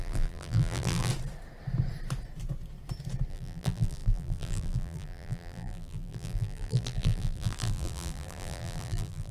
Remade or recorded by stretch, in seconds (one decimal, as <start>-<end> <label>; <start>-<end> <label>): 0.0-1.1 remade; 1.1-3.3 recorded; 3.3-9.3 remade